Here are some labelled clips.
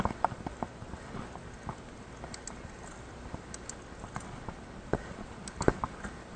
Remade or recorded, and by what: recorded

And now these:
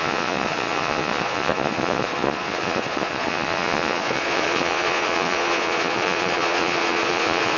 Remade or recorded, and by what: remade, vocoder, Vocos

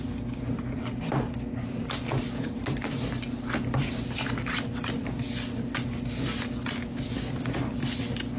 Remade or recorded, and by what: recorded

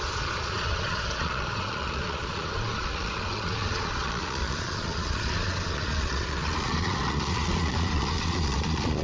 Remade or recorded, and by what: remade, vocoder, Vocos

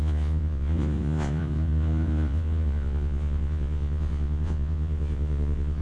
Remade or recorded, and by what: remade, vocoder, Vocos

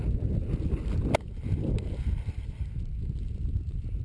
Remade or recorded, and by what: recorded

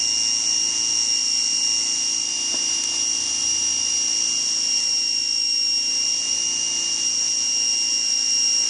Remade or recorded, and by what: recorded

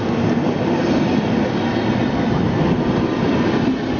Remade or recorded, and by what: recorded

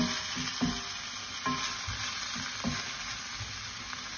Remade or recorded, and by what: recorded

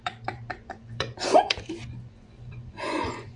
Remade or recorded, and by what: remade, vocoder, Vocos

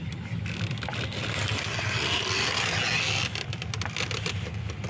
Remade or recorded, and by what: recorded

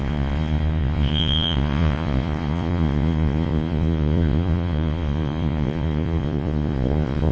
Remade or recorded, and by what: remade, vocoder, Vocos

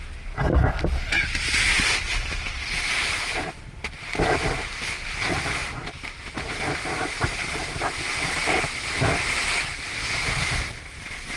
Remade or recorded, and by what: recorded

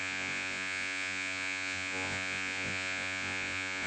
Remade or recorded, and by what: remade, vocoder, Vocos